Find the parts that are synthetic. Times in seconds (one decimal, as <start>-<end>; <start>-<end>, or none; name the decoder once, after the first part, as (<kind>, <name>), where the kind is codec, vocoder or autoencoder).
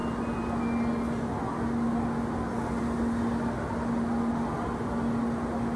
none